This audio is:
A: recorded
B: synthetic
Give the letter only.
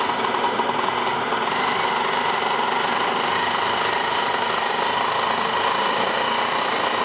A